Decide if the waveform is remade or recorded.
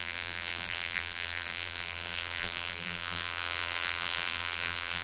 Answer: remade